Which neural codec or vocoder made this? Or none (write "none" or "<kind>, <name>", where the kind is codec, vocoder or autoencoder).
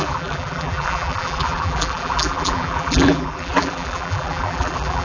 vocoder, BigVGAN v2